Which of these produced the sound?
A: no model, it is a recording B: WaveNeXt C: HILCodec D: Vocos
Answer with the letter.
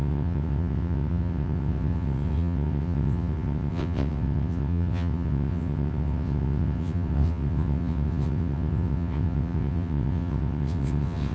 B